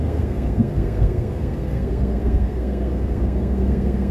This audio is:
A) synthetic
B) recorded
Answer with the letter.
A